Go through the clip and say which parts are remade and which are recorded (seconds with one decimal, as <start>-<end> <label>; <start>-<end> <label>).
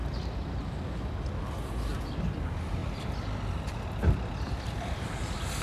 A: 0.0-5.6 recorded